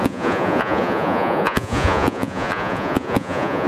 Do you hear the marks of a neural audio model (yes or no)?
yes